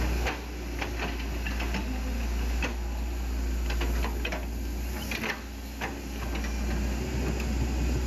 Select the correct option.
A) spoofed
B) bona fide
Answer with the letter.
B